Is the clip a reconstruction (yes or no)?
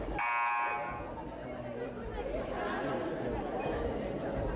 no